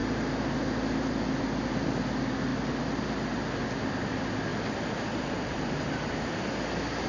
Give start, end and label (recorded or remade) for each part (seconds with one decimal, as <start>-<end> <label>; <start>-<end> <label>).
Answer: 0.0-7.1 recorded